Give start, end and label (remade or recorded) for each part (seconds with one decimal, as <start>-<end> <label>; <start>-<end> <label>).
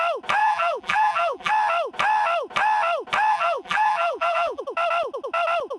0.0-0.4 recorded; 0.4-1.5 remade; 1.5-3.3 recorded; 3.3-4.6 remade; 4.6-5.8 recorded